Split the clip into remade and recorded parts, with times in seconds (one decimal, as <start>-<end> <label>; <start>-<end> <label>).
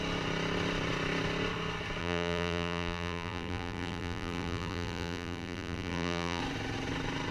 0.0-2.0 recorded; 2.0-6.4 remade; 6.4-7.3 recorded